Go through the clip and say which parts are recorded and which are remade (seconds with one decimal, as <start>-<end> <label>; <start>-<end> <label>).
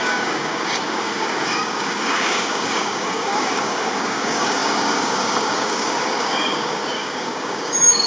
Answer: 0.0-8.1 remade